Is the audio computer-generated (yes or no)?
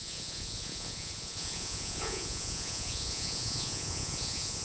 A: yes